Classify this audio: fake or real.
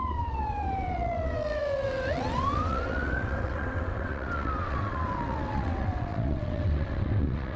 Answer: fake